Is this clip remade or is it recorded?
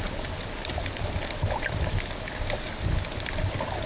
recorded